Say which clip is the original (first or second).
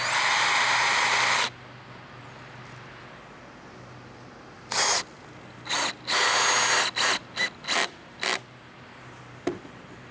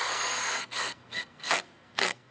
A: first